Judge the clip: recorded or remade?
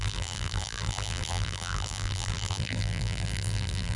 remade